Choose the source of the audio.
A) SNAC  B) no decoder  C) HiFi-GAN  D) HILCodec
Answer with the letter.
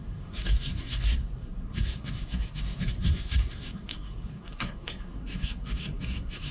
A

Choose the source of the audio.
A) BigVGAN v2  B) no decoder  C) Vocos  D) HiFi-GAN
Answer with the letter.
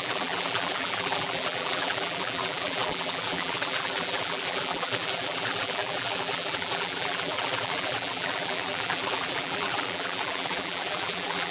A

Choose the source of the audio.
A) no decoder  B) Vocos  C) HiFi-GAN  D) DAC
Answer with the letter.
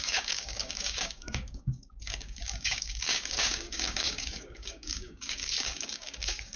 D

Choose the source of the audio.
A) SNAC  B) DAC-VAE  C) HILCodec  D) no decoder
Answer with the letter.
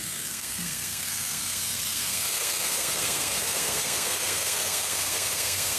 A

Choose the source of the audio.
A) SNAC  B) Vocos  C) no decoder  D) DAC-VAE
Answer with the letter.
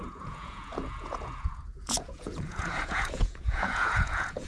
B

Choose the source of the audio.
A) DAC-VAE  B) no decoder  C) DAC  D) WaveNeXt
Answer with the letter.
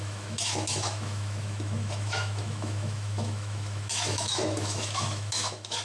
A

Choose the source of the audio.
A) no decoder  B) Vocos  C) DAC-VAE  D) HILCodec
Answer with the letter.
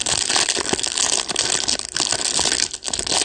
A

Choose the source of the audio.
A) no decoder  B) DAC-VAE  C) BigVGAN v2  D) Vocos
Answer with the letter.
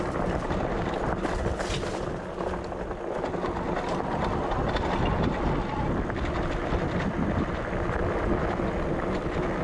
A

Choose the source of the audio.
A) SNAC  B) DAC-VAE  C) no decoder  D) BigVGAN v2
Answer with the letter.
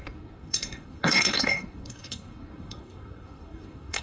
A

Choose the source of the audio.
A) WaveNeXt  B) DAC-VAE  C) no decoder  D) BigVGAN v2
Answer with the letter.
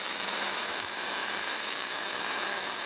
B